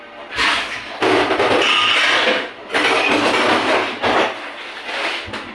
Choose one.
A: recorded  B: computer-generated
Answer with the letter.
B